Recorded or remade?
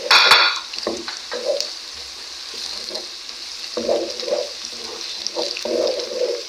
recorded